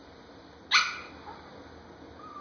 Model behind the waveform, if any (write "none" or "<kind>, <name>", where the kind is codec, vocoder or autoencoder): none